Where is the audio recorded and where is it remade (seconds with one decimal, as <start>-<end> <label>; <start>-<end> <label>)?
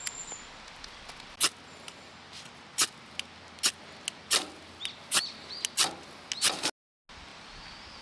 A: 0.0-8.0 recorded